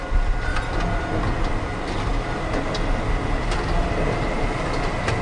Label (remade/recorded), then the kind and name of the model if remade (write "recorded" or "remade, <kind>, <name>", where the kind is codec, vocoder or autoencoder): recorded